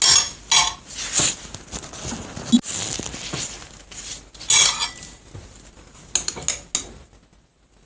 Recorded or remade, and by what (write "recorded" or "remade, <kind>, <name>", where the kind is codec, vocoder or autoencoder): recorded